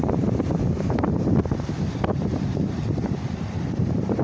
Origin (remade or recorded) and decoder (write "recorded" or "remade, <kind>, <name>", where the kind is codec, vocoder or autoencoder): remade, vocoder, BigVGAN v2